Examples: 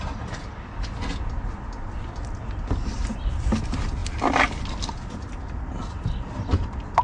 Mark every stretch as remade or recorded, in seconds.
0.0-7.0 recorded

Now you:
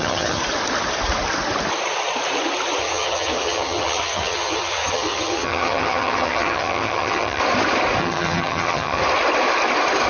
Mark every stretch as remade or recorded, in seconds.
0.0-0.4 remade; 0.4-2.8 recorded; 2.8-7.4 remade; 7.4-8.0 recorded; 8.0-9.0 remade; 9.0-10.1 recorded

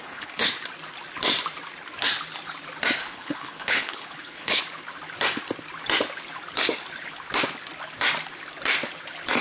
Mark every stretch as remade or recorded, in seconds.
0.0-0.5 remade; 0.5-3.0 recorded; 3.0-4.6 remade; 4.6-9.4 recorded

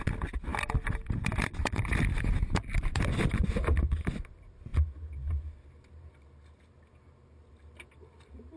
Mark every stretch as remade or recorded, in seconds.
0.0-8.6 recorded

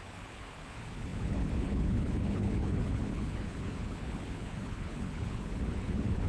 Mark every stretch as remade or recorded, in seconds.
0.0-6.3 remade

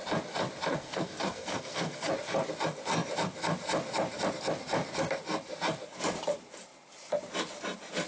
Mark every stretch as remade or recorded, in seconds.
0.0-0.7 recorded; 0.7-2.1 remade; 2.1-8.1 recorded

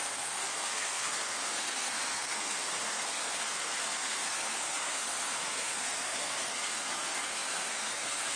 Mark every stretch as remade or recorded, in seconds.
0.0-8.4 remade